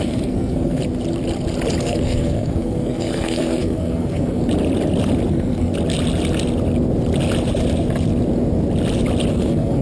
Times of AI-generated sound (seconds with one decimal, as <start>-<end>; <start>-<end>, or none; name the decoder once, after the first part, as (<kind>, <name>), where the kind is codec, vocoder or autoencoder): 0.0-0.8 (codec, SNAC); 1.8-4.4; 5.3-5.7; 9.3-9.8